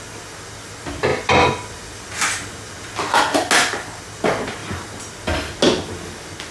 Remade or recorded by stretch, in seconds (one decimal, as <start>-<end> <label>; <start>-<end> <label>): 0.0-6.5 recorded